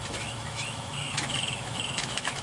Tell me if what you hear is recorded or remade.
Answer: remade